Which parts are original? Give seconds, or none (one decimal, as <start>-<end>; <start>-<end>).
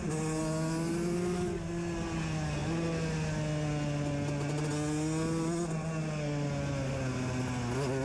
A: 0.0-8.0